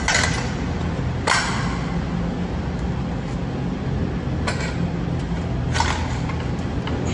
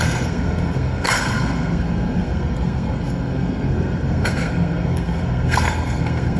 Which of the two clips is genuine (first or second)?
first